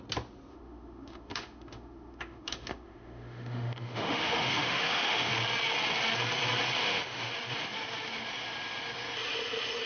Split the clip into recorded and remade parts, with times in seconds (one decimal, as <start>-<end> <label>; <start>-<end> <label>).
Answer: 0.0-0.5 recorded; 0.5-5.3 remade; 5.3-6.8 recorded; 6.8-7.3 remade; 7.3-9.9 recorded